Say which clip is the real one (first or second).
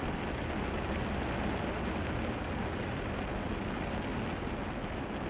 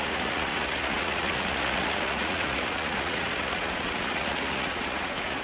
first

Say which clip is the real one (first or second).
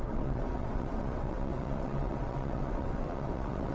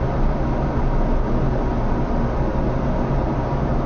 second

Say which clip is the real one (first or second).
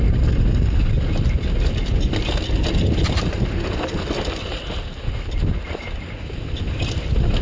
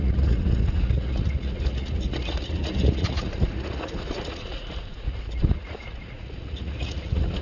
first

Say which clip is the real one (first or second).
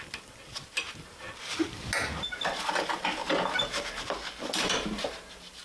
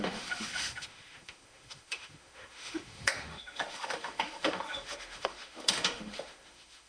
first